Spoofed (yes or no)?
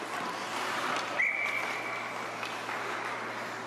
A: no